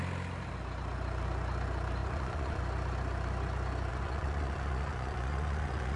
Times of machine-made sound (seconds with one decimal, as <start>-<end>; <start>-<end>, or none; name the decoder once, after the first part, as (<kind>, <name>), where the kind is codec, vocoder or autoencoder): 2.0-2.6 (vocoder, Vocos); 3.9-6.0